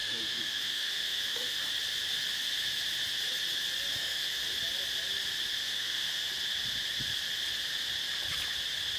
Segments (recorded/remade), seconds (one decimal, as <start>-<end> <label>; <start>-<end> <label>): 0.0-1.6 remade; 1.6-3.9 recorded; 3.9-4.4 remade; 4.4-5.6 recorded; 5.6-6.3 remade; 6.3-9.0 recorded